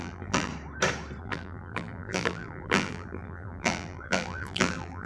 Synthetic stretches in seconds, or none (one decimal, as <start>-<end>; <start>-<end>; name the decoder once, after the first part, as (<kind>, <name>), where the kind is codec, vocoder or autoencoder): 0.0-0.5 (vocoder, BigVGAN v2); 1.2-5.1